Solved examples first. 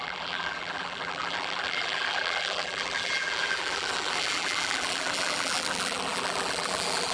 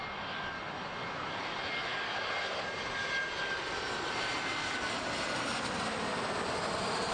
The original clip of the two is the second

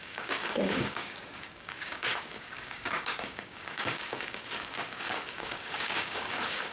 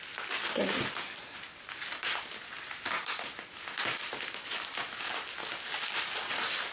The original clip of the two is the second